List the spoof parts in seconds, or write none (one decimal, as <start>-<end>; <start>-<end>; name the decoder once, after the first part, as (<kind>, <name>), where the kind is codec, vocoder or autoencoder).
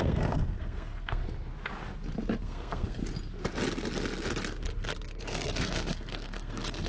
0.0-1.2 (codec, SNAC); 2.4-3.0; 5.2-6.9